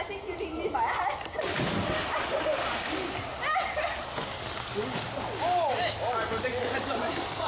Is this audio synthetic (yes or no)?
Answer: no